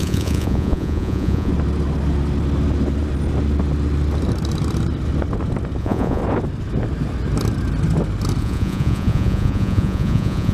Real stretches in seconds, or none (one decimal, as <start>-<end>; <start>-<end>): 1.5-5.8; 6.2-8.4